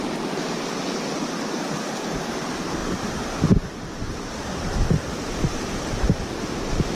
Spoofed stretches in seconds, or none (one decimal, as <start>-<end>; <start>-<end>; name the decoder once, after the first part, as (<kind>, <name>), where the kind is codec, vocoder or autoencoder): 0.0-0.4 (vocoder, BigVGAN v2); 1.3-6.9